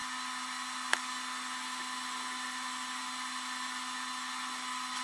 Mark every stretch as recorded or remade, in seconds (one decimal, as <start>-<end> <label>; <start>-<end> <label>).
0.0-5.0 recorded